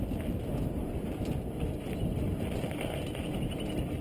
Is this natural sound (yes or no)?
yes